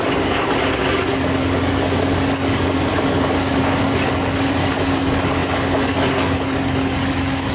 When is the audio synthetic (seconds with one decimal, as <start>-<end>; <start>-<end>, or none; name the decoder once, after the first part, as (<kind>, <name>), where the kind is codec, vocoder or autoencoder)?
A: 0.0-7.5 (codec, DAC)